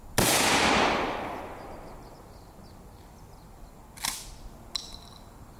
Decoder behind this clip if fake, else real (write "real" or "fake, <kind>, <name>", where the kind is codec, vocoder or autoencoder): real